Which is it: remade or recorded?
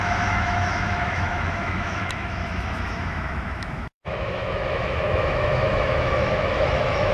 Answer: remade